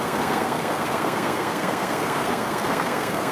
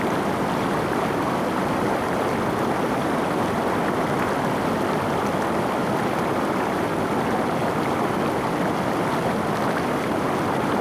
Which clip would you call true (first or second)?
second